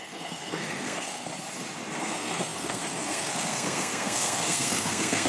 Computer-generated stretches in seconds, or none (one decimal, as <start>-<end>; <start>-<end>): 0.0-1.3; 2.0-5.3